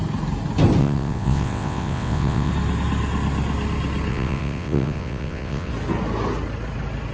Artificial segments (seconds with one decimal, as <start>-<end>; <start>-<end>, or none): 0.8-2.5; 4.1-5.7